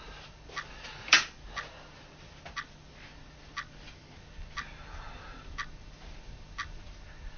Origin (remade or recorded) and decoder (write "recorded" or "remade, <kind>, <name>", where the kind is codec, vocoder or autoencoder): recorded